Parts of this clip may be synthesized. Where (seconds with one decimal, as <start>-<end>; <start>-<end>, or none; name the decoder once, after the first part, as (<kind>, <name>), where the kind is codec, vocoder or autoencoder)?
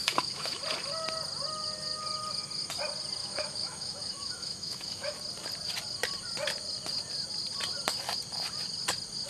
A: 0.0-0.6 (autoencoder, DAC-VAE); 3.2-5.1